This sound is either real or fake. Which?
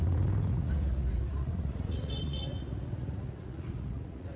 fake